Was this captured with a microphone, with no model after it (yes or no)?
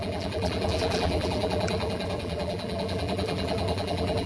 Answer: no